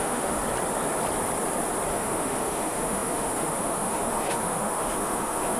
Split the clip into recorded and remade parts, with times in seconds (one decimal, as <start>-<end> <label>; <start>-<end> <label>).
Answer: 0.0-0.4 remade; 0.4-1.9 recorded; 1.9-5.6 remade